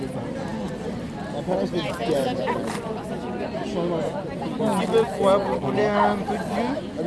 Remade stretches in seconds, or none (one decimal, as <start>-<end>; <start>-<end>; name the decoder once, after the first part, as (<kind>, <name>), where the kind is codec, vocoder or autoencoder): none